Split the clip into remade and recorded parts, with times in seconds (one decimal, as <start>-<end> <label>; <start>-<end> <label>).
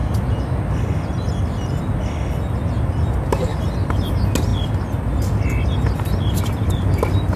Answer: 0.0-3.5 recorded; 3.5-4.1 remade; 4.1-7.4 recorded